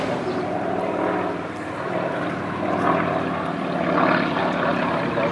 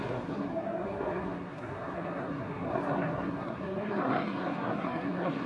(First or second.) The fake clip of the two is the second